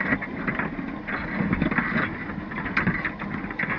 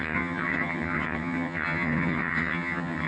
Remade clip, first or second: second